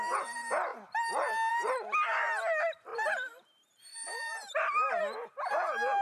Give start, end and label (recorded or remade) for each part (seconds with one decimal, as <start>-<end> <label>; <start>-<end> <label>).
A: 0.0-2.9 recorded; 2.9-5.0 remade; 5.0-6.0 recorded